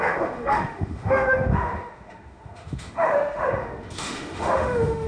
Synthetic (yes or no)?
yes